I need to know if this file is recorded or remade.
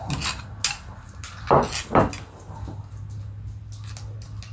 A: recorded